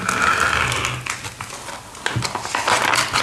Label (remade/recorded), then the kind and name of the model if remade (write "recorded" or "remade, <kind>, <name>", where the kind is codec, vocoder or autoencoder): recorded